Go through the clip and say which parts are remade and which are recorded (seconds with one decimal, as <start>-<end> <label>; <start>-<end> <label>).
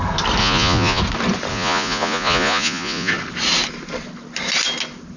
0.0-0.4 recorded; 0.4-1.0 remade; 1.0-1.5 recorded; 1.5-3.1 remade; 3.1-5.2 recorded